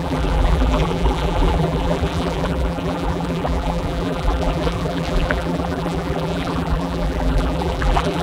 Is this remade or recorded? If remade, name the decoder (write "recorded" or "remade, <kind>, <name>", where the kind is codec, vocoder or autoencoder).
remade, vocoder, BigVGAN v2